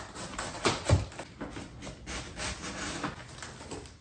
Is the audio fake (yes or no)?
no